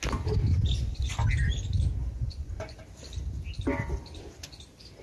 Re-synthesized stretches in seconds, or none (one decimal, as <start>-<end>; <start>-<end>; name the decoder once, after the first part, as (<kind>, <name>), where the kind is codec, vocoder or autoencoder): 0.5-1.1 (vocoder, Vocos); 2.0-2.8